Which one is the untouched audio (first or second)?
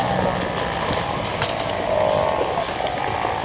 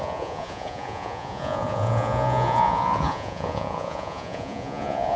first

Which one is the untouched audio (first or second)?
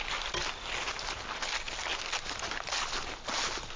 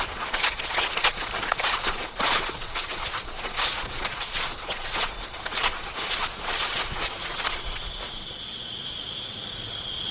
first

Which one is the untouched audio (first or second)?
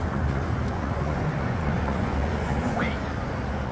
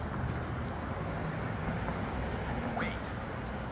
second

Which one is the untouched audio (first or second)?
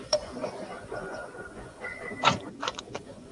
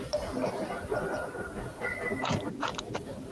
second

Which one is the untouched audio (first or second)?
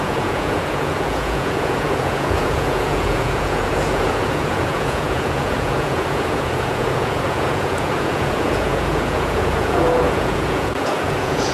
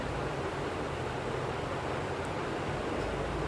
second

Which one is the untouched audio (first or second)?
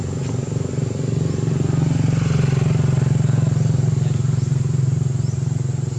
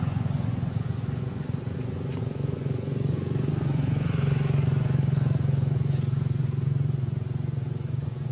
first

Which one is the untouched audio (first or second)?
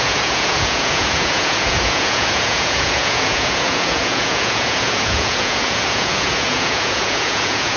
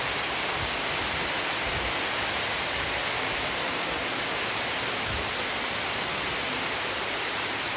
second